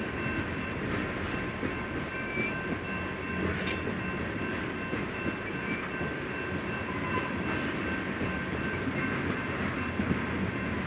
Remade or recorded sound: recorded